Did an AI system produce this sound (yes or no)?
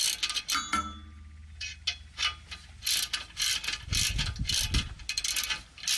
no